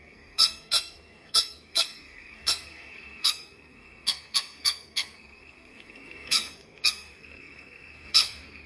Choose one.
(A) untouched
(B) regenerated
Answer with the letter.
B